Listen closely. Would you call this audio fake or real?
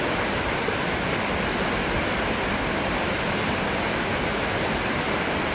real